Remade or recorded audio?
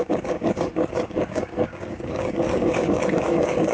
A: remade